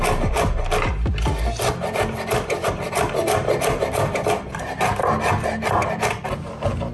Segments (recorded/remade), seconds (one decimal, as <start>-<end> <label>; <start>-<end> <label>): 0.0-6.9 recorded